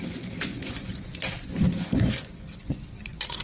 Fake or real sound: fake